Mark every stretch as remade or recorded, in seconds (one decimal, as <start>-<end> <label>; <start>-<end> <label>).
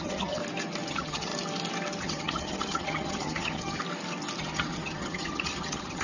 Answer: 0.0-0.4 remade; 0.4-0.9 recorded; 0.9-1.3 remade; 1.3-2.0 recorded; 2.0-3.8 remade; 3.8-4.4 recorded; 4.4-6.0 remade